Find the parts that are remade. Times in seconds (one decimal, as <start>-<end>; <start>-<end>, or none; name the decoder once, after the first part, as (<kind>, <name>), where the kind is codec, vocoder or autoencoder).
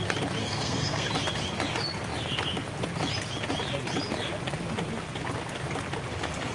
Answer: 0.4-1.1 (codec, SNAC)